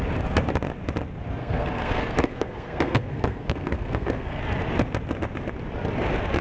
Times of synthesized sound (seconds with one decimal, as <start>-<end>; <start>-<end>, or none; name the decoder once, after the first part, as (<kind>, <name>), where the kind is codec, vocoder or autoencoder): 1.4-4.4 (codec, SNAC)